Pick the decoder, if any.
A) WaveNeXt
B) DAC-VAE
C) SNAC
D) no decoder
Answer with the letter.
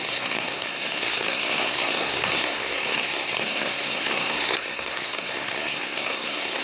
C